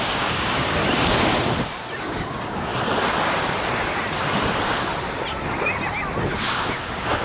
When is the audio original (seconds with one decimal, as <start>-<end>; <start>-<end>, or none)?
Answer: 0.8-2.0; 2.7-6.4